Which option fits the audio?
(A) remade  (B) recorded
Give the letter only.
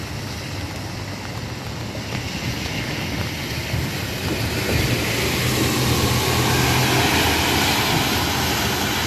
B